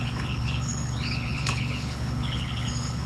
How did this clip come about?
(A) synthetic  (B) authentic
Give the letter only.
A